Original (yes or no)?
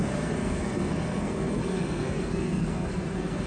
no